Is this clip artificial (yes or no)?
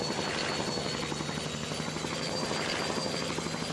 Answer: no